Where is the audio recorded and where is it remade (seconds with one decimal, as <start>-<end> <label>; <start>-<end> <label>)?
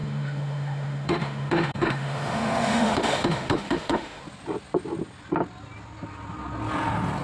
0.0-4.2 remade; 4.2-7.2 recorded